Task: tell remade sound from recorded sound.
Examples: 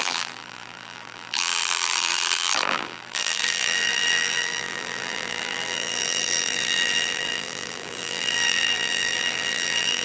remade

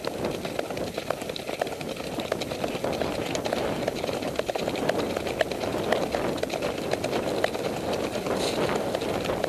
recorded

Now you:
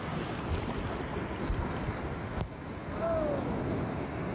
recorded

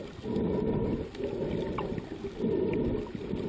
recorded